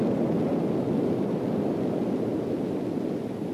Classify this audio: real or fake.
real